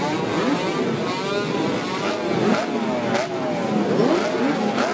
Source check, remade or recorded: recorded